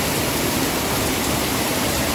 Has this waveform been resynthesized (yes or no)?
no